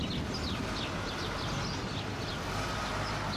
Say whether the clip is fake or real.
real